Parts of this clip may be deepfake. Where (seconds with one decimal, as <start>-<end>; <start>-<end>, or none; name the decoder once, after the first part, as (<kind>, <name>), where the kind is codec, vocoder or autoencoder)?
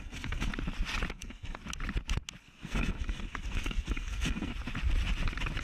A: 0.0-0.5 (codec, SNAC); 1.1-1.6; 2.4-4.5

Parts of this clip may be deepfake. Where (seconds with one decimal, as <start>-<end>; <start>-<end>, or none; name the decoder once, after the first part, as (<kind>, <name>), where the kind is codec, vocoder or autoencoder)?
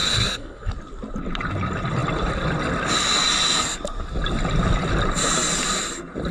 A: 0.0-0.7 (codec, SNAC)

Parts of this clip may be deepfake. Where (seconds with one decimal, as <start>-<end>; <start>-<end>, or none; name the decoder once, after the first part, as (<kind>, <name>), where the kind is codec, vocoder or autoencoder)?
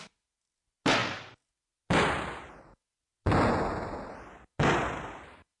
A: none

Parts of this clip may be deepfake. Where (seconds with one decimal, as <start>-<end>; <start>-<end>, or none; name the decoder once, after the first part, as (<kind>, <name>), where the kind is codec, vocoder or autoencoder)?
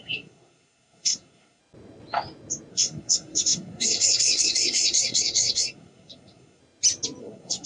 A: 0.0-1.6 (codec, SNAC); 2.7-6.6; 7.2-7.7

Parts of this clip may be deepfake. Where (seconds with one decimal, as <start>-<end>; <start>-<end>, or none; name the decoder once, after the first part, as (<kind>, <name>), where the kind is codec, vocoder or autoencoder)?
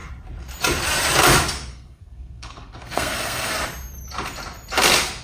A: 1.7-3.5 (codec, SNAC)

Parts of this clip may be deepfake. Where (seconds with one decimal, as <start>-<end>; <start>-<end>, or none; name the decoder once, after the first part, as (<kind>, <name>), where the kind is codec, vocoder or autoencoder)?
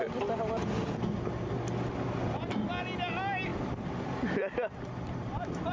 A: none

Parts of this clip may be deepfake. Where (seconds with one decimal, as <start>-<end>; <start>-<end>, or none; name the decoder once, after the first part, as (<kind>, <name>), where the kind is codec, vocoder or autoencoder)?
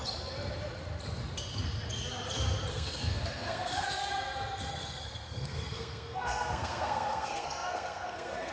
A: 2.7-4.1 (codec, SNAC); 4.6-8.5